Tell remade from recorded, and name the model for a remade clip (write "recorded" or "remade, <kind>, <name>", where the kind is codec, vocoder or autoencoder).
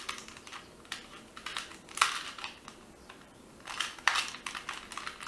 remade, vocoder, BigVGAN v2